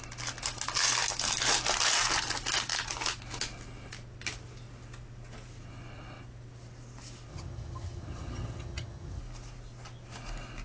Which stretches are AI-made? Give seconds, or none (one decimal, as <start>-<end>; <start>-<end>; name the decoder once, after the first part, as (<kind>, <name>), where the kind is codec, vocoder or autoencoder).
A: 7.3-9.2 (vocoder, HiFi-GAN)